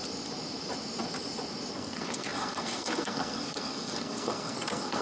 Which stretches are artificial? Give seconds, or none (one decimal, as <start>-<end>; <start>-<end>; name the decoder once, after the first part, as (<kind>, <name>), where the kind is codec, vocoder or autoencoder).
1.7-5.0 (codec, SNAC)

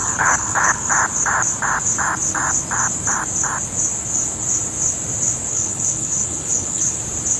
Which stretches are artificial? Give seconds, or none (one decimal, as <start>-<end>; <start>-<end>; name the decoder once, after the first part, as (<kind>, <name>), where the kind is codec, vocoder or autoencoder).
0.0-0.9 (codec, HILCodec); 5.5-7.0

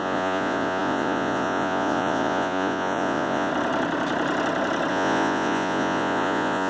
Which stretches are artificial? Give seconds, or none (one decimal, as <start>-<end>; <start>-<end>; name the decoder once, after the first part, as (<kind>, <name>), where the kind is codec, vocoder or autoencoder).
0.0-3.5 (vocoder, Vocos); 4.9-6.7

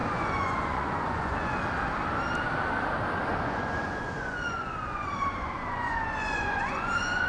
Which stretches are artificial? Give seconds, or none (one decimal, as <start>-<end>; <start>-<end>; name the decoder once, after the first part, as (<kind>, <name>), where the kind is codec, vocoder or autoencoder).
0.0-1.6 (vocoder, Vocos); 3.3-7.3

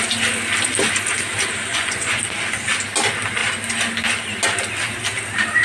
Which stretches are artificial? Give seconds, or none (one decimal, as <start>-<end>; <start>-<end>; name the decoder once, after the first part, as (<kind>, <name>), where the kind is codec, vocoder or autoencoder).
1.7-2.2 (vocoder, Vocos)